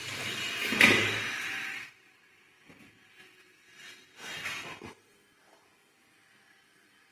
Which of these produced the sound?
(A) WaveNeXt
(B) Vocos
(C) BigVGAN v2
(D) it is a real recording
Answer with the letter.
D